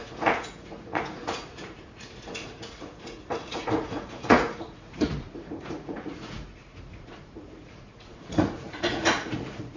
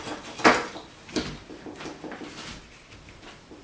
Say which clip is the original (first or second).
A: second